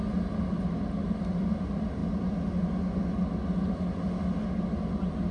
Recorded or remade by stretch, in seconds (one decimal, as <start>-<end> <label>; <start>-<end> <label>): 0.0-5.3 recorded

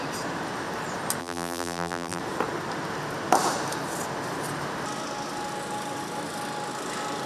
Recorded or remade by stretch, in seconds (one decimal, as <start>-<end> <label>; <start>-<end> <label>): 0.0-1.2 recorded; 1.2-2.2 remade; 2.2-7.3 recorded

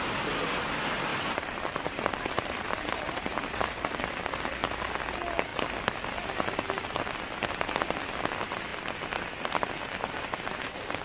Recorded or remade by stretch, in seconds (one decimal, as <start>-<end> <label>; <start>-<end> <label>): 0.0-1.1 recorded; 1.1-4.5 remade; 4.5-11.0 recorded

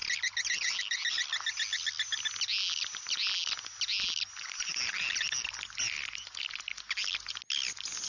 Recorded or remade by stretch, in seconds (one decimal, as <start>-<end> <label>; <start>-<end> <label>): 0.0-8.1 recorded

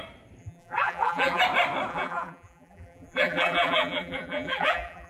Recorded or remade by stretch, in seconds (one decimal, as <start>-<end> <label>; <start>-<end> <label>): 0.0-0.4 recorded; 0.4-1.4 remade; 1.4-1.9 recorded; 1.9-5.1 remade

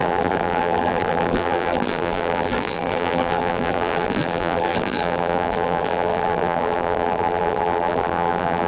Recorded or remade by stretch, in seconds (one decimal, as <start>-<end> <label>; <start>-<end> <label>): 0.0-8.7 remade

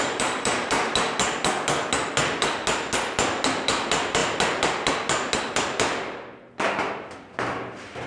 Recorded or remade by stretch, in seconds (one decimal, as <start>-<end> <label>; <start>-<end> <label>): 0.0-0.9 remade; 0.9-8.1 recorded

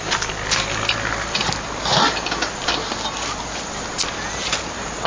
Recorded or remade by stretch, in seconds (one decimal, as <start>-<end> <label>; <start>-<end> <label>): 0.0-5.1 recorded